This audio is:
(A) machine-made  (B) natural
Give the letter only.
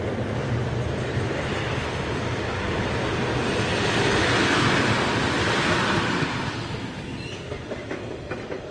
B